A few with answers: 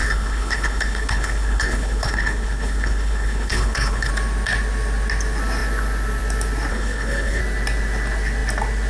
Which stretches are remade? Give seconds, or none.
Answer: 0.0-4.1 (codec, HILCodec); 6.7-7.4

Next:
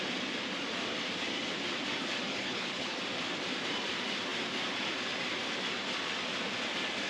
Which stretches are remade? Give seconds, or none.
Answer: 2.3-3.0 (codec, HILCodec)

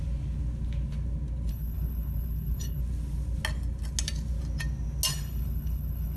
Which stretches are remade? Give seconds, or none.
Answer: 1.5-2.8 (codec, HILCodec); 5.1-6.2

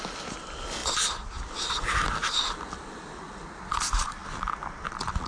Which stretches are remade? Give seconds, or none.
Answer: none

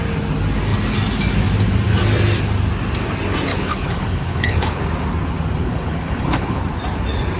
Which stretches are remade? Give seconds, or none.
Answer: 3.5-4.8 (codec, HILCodec); 5.6-6.6